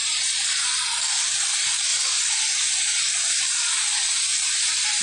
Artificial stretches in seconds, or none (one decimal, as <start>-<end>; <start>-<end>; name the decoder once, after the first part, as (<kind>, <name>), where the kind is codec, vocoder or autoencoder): 0.0-0.7 (vocoder, BigVGAN v2); 1.9-5.0